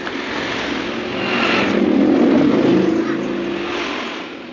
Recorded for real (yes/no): yes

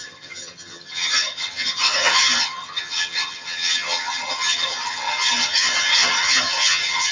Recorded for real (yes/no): no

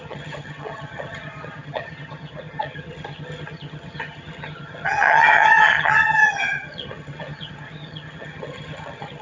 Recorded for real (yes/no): no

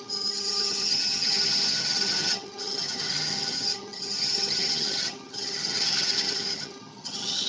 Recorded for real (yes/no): no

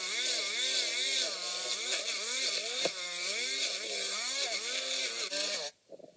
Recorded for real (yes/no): yes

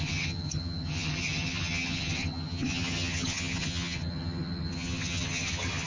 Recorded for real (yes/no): no